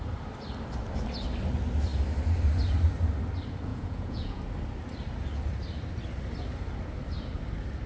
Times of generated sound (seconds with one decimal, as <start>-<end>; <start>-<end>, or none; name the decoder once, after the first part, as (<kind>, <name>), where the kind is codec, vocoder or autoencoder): 3.7-4.4 (vocoder, Vocos)